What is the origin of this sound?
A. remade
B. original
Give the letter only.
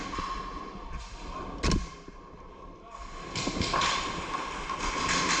B